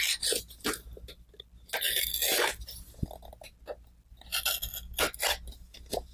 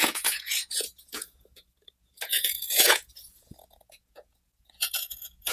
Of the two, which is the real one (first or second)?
first